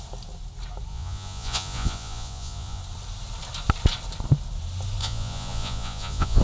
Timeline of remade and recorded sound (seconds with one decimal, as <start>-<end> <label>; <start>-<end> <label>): 0.0-0.9 recorded; 0.9-2.8 remade; 2.8-5.0 recorded; 5.0-6.4 remade